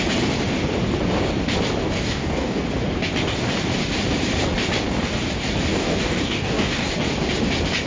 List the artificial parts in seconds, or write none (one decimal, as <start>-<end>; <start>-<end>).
1.8-2.6; 5.7-6.9